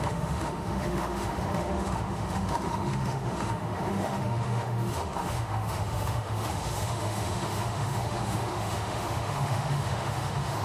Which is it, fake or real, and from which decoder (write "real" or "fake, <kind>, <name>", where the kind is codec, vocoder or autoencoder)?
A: fake, autoencoder, DAC-VAE